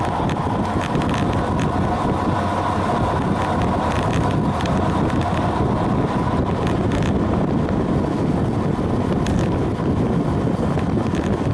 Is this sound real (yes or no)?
yes